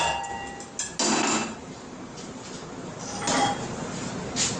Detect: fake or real real